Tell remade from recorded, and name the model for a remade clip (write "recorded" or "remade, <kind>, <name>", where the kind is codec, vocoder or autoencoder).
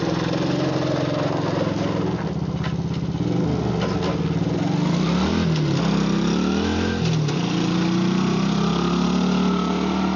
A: recorded